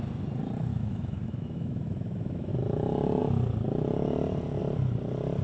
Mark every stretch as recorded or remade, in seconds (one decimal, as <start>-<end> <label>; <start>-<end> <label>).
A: 0.0-0.7 recorded; 0.7-2.5 remade; 2.5-5.4 recorded